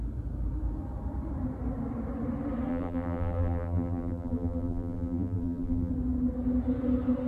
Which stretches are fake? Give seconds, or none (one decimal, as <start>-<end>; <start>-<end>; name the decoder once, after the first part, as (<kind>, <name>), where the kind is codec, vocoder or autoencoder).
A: 2.7-5.9 (vocoder, BigVGAN v2)